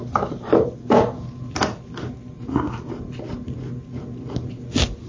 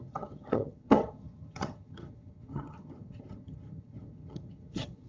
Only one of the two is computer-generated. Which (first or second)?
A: second